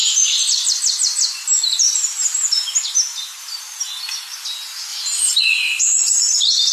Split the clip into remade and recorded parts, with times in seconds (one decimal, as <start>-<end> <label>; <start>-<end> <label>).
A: 0.0-4.0 remade; 4.0-4.9 recorded; 4.9-5.4 remade; 5.4-6.7 recorded